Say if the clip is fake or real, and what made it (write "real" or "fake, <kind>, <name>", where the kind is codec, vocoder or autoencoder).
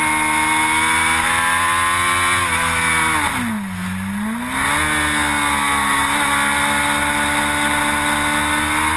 real